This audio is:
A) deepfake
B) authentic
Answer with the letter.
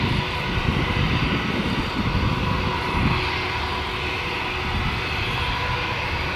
B